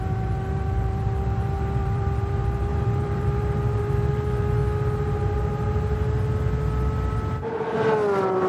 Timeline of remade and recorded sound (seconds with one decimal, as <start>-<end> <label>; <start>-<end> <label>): 0.0-4.6 remade; 4.6-8.5 recorded